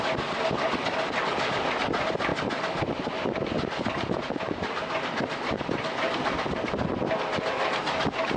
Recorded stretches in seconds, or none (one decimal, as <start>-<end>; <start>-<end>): 0.0-8.4